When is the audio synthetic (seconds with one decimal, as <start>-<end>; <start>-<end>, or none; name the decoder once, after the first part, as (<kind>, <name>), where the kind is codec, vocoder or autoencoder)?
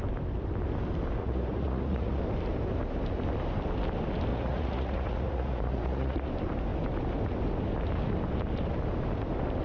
1.2-2.2 (vocoder, Vocos); 4.3-6.3